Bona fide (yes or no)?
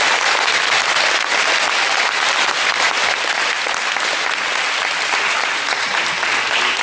yes